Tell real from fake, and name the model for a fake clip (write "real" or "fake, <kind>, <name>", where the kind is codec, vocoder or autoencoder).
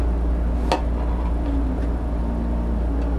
real